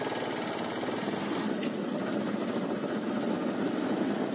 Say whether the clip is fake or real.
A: real